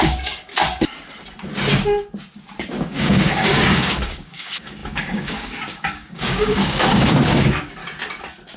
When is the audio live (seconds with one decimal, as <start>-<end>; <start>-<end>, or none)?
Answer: 0.5-2.8; 7.8-8.6